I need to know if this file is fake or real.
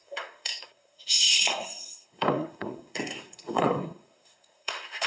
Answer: fake